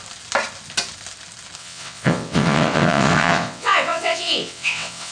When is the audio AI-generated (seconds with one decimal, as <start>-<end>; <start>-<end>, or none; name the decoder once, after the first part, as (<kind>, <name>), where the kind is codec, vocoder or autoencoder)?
1.6-5.1 (vocoder, WaveNeXt)